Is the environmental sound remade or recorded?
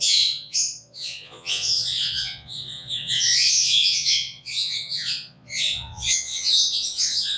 remade